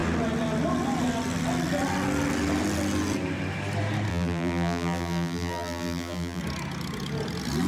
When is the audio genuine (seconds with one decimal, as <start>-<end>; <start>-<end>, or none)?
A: 0.0-4.1; 6.4-7.7

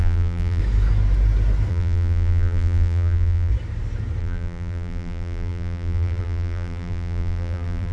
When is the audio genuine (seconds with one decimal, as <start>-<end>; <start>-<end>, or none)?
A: 0.6-1.7; 3.5-4.2

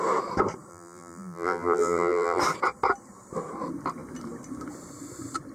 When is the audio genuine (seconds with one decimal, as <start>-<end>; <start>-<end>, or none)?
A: 0.0-0.7; 2.4-5.5